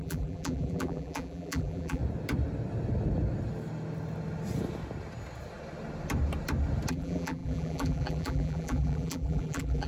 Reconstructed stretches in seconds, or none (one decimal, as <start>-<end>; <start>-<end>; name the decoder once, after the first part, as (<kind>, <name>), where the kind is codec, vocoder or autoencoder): 0.0-2.0 (vocoder, BigVGAN v2); 6.9-9.9